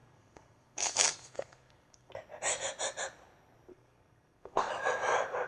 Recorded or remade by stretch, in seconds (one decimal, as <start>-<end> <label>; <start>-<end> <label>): 0.0-2.1 remade; 2.1-3.7 recorded; 3.7-4.7 remade; 4.7-5.5 recorded